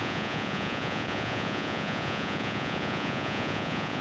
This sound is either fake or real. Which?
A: fake